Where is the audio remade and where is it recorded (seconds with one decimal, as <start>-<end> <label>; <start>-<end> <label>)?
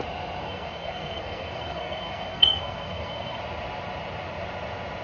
0.0-0.4 recorded; 0.4-3.4 remade; 3.4-5.0 recorded